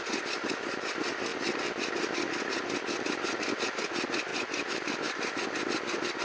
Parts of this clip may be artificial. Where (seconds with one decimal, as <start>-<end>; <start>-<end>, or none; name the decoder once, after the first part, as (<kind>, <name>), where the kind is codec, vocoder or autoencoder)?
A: none

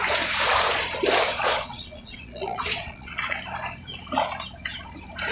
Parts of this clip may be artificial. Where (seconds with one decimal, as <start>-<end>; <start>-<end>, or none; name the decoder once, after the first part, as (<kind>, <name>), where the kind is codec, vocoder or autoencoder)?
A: 1.3-3.4 (vocoder, Vocos)

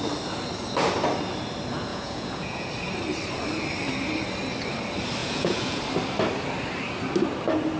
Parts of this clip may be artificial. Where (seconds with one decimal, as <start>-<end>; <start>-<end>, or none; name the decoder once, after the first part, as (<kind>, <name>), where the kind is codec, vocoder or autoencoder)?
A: 1.9-2.7 (vocoder, Vocos); 5.2-5.8

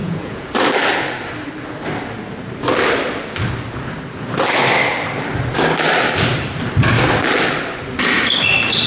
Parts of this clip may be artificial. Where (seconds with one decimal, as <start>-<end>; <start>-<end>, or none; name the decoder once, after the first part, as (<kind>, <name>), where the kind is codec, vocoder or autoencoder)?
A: 0.0-0.5 (vocoder, Vocos)

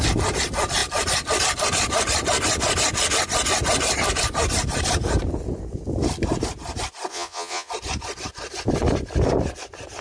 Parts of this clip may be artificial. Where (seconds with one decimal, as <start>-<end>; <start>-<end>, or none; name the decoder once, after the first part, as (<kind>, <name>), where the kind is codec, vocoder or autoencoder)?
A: 7.1-7.7 (vocoder, Vocos)